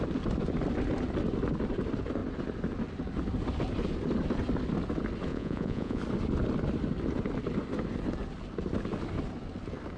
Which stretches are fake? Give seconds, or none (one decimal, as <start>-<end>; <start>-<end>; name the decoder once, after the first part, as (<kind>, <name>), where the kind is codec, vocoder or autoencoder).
5.3-6.0 (vocoder, Vocos)